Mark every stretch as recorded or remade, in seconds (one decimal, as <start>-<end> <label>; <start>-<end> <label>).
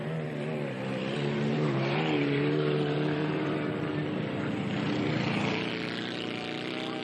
0.0-1.5 recorded; 1.5-5.7 remade; 5.7-7.0 recorded